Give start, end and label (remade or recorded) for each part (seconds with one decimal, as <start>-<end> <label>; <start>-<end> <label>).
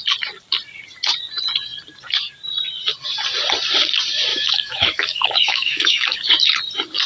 0.0-4.3 recorded; 4.3-6.3 remade; 6.3-7.1 recorded